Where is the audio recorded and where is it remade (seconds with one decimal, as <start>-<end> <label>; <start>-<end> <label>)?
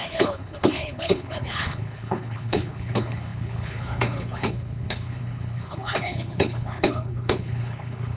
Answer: 0.0-8.2 remade